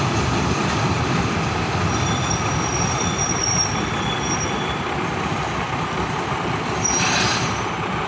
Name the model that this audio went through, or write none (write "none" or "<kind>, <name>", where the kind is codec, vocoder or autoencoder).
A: none